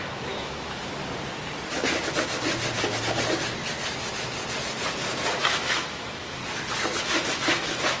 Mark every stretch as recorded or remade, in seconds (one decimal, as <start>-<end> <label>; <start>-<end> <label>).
0.0-0.8 remade; 0.8-5.4 recorded; 5.4-6.4 remade; 6.4-7.0 recorded; 7.0-8.0 remade